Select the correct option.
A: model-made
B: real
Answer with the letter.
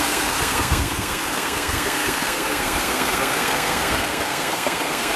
A